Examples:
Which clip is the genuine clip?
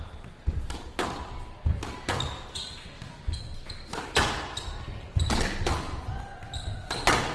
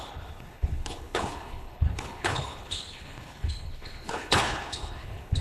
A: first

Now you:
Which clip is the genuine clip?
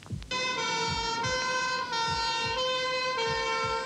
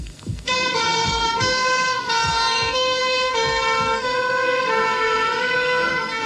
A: first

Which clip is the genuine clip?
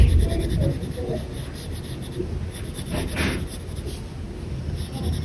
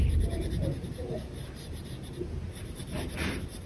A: first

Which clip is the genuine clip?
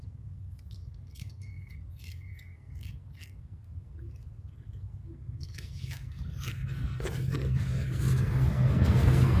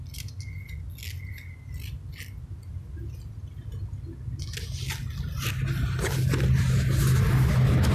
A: second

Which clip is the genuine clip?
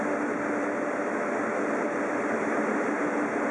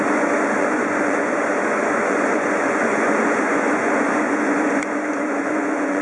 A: first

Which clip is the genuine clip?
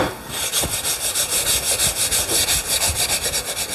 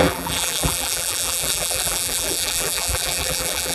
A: first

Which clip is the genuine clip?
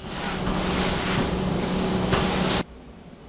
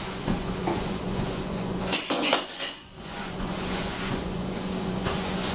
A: first